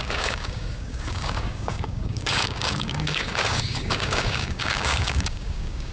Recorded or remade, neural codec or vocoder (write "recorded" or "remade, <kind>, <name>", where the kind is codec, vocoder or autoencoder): remade, codec, DAC